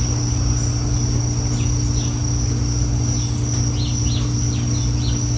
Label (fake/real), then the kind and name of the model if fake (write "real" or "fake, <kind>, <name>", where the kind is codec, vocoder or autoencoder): real